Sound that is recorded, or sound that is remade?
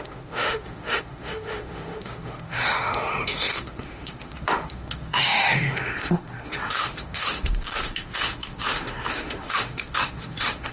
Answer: remade